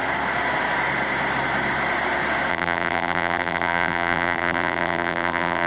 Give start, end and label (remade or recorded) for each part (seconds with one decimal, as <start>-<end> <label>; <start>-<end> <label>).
0.0-2.5 recorded; 2.5-5.7 remade